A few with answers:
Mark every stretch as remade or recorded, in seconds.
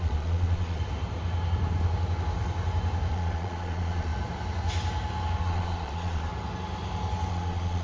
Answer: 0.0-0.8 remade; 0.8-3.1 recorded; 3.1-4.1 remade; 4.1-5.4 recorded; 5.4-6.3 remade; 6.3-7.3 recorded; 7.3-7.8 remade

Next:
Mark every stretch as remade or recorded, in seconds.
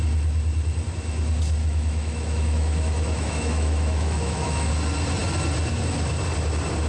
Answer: 0.0-1.6 recorded; 1.6-4.7 remade; 4.7-6.9 recorded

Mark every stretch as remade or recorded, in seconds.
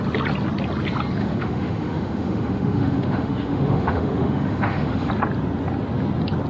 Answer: 0.0-1.2 recorded; 1.2-5.1 remade; 5.1-6.5 recorded